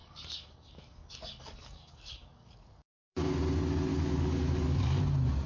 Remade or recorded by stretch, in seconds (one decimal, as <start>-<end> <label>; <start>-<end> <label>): 0.0-3.3 remade; 3.3-3.9 recorded; 3.9-5.0 remade; 5.0-5.5 recorded